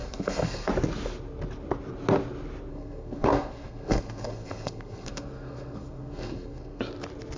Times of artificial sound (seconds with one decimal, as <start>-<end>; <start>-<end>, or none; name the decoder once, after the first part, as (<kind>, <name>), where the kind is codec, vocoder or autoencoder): 0.0-0.7 (codec, SNAC); 2.7-6.8